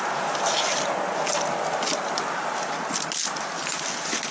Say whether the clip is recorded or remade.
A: recorded